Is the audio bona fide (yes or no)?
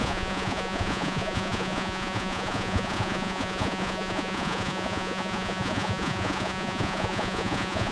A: no